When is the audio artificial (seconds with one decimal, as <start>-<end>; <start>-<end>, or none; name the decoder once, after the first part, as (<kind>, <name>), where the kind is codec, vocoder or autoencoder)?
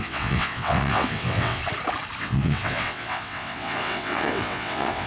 0.0-1.6 (vocoder, WaveNeXt); 2.2-5.1